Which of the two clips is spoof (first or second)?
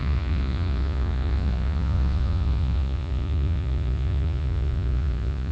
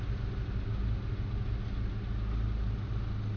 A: first